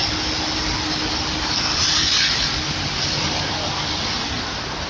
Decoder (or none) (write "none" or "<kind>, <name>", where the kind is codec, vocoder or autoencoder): none